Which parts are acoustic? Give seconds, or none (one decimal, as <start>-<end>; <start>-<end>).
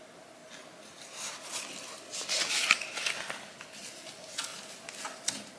0.0-5.6